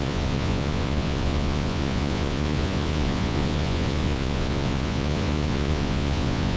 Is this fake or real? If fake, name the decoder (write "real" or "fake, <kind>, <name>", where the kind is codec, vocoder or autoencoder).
fake, vocoder, Vocos